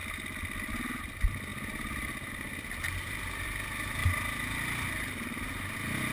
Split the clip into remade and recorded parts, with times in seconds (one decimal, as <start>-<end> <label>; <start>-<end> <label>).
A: 0.0-1.0 recorded; 1.0-4.0 remade; 4.0-4.9 recorded; 4.9-6.1 remade